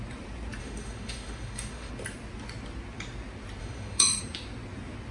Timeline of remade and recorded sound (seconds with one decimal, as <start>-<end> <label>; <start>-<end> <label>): 0.0-0.6 recorded; 0.6-1.9 remade; 1.9-3.6 recorded; 3.6-4.2 remade; 4.2-5.1 recorded